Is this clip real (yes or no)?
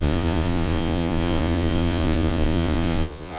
no